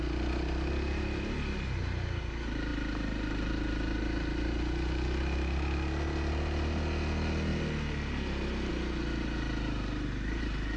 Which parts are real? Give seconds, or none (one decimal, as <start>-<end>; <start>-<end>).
0.0-10.8

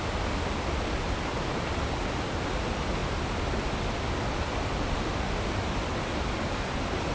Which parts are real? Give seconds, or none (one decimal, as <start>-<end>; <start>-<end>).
0.0-7.1

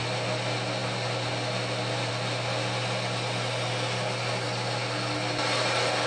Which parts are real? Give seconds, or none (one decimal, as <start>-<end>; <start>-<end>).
0.0-6.1

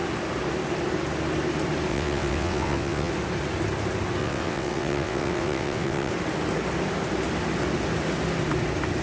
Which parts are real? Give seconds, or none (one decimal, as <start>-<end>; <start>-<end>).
0.0-1.9; 3.1-4.2; 6.1-9.0

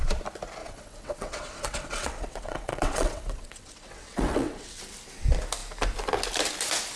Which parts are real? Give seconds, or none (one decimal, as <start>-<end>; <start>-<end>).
0.0-0.6; 4.8-7.0

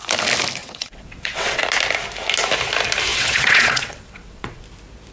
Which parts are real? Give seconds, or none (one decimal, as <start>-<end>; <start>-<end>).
0.0-0.6; 1.6-3.1; 4.6-5.1